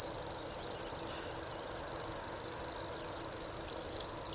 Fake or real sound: real